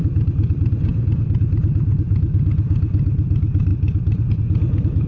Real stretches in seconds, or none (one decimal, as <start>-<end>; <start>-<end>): 0.0-3.7; 4.3-5.1